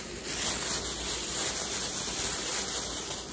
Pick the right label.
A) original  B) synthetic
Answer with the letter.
A